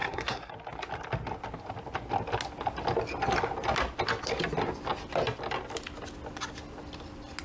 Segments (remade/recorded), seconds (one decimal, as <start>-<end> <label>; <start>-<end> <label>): 0.0-0.5 remade; 0.5-7.4 recorded